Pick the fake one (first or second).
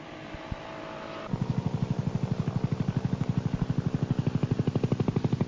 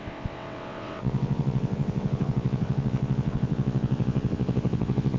second